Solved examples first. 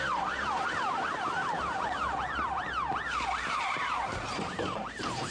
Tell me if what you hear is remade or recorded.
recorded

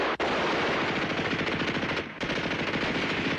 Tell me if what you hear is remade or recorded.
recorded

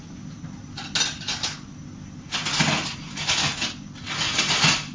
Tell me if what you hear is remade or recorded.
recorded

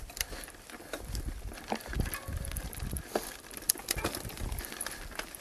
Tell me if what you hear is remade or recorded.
recorded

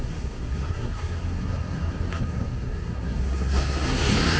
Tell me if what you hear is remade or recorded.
remade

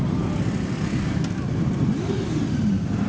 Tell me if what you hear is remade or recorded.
recorded